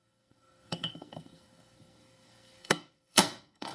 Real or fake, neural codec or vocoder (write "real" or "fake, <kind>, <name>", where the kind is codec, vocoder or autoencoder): fake, codec, SNAC